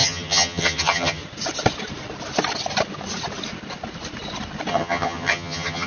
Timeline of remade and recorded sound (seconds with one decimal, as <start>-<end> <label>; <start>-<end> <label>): 0.0-1.2 remade; 1.2-4.7 recorded; 4.7-5.9 remade